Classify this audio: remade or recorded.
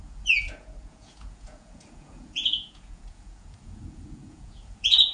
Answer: remade